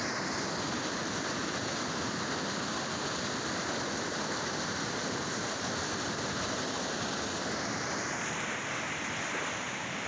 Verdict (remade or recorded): recorded